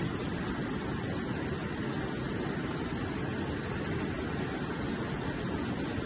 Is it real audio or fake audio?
real